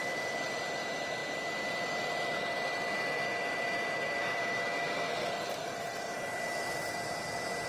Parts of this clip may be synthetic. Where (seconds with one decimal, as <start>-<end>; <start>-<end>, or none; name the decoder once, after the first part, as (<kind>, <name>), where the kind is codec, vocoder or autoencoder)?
4.2-5.3 (codec, SNAC)